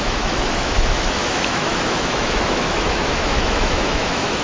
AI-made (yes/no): yes